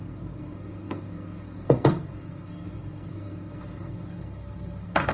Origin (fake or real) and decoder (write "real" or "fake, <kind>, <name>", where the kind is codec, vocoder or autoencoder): fake, codec, SNAC